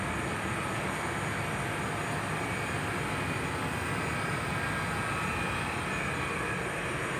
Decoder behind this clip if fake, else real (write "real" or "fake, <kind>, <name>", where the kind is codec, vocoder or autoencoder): real